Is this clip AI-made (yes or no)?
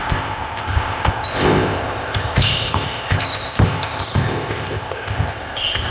yes